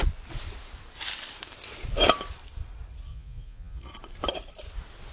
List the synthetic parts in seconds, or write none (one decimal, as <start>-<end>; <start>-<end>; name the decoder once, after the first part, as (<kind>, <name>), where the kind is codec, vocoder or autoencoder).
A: 3.1-3.8 (vocoder, Vocos)